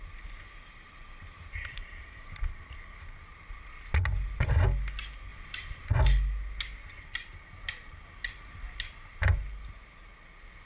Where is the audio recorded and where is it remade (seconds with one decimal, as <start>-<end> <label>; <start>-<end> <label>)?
0.0-10.7 recorded